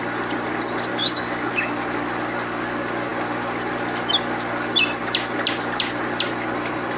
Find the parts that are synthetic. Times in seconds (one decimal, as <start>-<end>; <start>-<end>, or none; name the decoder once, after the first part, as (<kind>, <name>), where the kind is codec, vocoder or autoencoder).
0.9-1.5 (codec, DAC)